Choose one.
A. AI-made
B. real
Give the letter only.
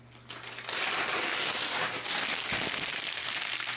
B